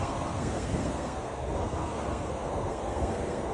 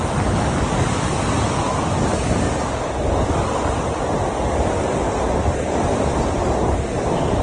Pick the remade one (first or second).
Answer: first